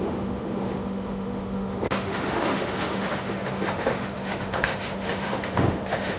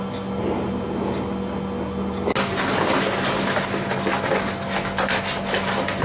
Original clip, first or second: second